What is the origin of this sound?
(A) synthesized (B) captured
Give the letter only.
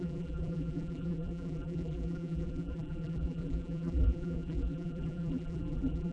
A